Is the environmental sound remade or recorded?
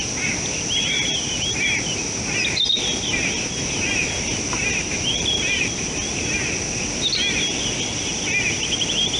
recorded